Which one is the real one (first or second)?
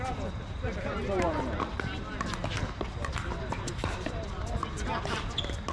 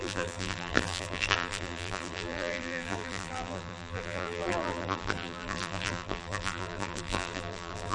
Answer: first